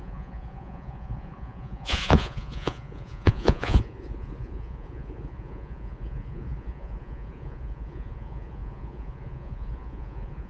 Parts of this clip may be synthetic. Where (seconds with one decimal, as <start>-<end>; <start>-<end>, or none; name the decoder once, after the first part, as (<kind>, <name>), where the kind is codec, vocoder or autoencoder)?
0.0-10.5 (vocoder, Vocos)